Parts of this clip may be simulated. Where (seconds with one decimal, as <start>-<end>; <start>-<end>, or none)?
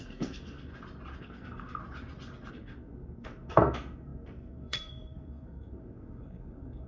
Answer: 0.0-0.7; 1.2-1.8; 2.5-6.9